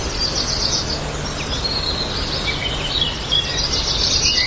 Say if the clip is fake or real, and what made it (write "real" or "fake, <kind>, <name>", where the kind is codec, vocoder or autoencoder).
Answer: real